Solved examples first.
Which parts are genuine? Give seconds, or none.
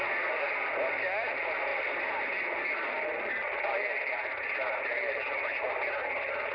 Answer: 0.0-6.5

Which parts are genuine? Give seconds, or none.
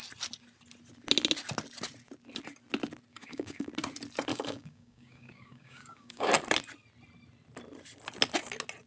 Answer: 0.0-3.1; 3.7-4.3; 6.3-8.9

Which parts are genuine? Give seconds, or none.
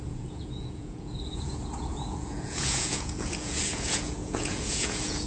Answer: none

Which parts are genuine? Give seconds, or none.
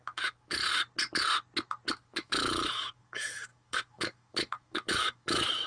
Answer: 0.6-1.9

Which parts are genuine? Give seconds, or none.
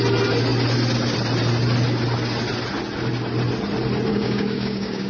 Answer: 0.0-4.1